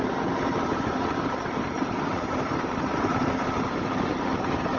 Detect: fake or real fake